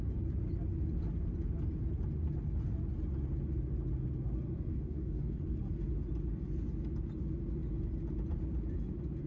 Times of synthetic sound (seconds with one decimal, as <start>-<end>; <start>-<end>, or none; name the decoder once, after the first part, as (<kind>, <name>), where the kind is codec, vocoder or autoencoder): 4.7-5.4 (codec, DAC)